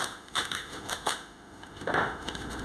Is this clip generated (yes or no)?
yes